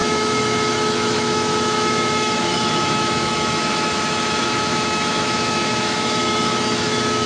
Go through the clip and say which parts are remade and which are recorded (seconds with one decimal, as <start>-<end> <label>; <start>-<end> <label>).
0.0-7.3 remade